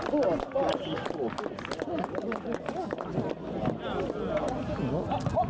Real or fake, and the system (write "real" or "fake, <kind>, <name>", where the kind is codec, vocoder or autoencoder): real